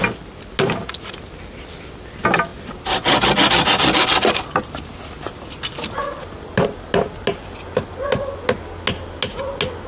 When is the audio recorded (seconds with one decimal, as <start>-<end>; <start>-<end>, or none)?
0.0-9.9

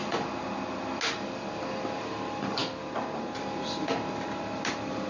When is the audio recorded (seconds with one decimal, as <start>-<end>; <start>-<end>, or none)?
0.0-5.1

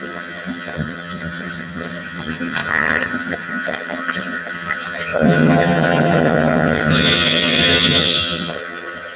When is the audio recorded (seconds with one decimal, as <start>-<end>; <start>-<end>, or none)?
none

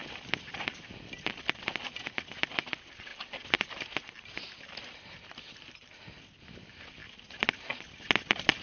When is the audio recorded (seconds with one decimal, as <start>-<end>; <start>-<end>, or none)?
0.0-8.6